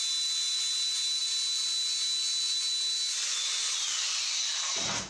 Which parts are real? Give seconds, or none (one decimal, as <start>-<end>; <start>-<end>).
0.0-5.1